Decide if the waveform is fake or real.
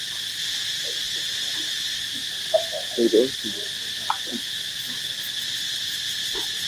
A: real